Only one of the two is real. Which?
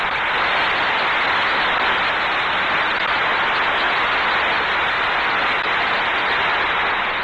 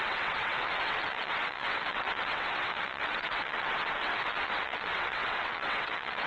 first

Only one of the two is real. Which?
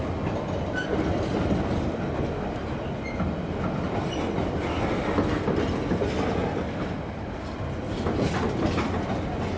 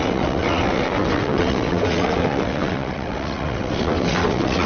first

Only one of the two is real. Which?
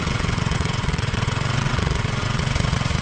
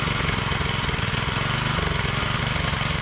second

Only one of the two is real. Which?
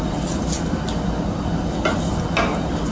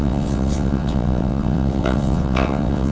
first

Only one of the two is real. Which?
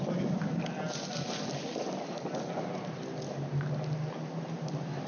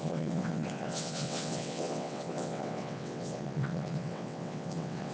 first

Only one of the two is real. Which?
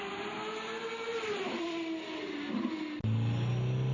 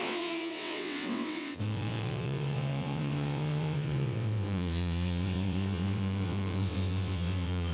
first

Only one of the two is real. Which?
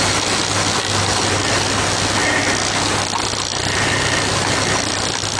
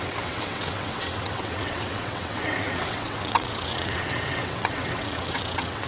first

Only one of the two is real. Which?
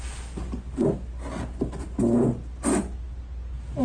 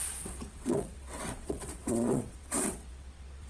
first